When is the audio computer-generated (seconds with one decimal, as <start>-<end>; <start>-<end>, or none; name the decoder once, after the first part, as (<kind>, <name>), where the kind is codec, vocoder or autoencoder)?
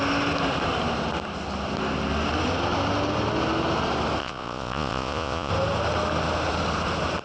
4.2-5.5 (vocoder, Vocos)